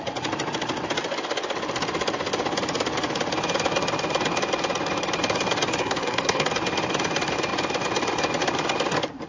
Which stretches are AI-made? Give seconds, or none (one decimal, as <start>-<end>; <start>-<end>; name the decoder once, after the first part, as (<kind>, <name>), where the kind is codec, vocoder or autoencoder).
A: 5.8-6.5 (codec, SNAC)